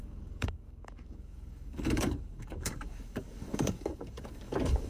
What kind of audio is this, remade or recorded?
remade